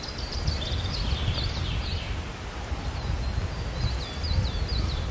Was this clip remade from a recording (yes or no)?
no